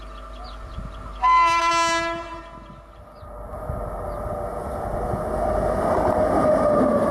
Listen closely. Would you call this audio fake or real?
real